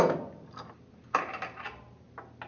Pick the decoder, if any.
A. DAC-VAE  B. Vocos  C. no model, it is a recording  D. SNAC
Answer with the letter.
C